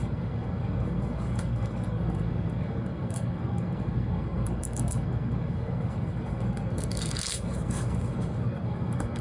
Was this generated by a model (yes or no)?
yes